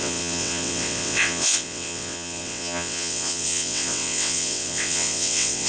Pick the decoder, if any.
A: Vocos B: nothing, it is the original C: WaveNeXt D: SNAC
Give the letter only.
C